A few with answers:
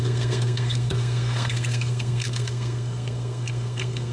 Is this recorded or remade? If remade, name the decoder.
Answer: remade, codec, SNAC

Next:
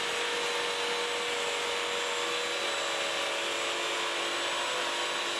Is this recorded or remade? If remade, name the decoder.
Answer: recorded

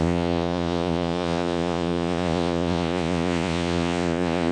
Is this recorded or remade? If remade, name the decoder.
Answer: remade, vocoder, Vocos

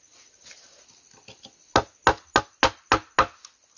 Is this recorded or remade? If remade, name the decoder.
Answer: recorded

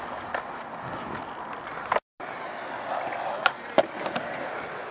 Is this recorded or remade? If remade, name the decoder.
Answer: recorded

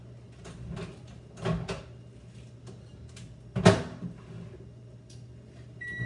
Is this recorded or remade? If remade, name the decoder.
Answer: recorded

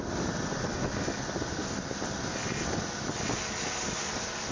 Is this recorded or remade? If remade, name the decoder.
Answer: recorded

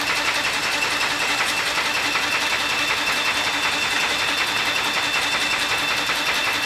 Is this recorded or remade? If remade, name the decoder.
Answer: recorded